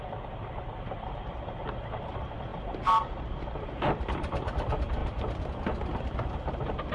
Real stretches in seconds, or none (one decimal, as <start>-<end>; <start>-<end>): 0.0-6.9